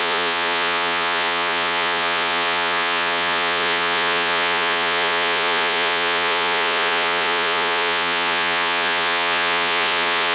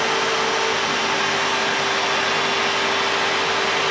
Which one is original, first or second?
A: second